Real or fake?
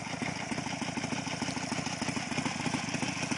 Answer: real